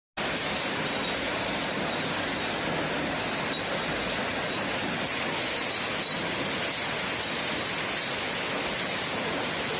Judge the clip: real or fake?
real